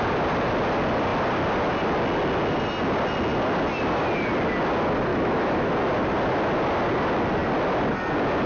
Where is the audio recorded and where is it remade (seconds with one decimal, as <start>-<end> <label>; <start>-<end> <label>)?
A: 0.0-5.1 recorded; 5.1-5.7 remade; 5.7-8.5 recorded